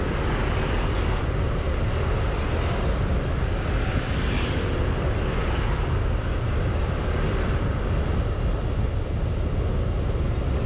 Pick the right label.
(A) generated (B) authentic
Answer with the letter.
B